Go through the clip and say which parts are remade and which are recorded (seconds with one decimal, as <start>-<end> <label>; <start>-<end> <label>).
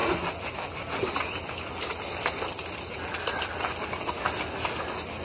0.0-5.2 recorded